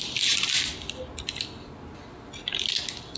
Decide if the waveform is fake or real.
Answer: real